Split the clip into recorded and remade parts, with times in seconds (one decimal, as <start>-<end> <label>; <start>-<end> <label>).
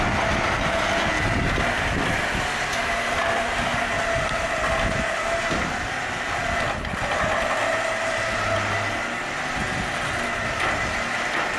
0.0-11.6 recorded